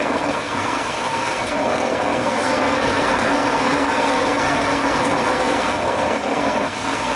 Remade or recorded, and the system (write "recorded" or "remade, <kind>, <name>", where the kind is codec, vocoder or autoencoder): remade, codec, SNAC